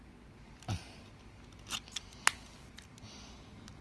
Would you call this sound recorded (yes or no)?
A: yes